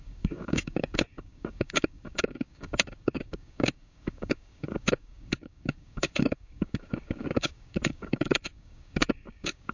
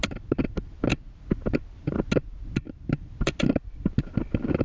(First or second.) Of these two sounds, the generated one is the first